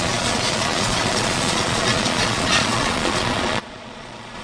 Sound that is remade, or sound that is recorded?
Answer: remade